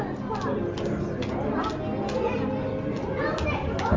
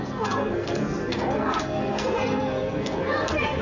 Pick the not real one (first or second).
second